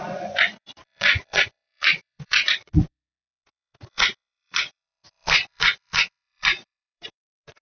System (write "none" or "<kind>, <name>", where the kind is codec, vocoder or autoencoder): vocoder, Vocos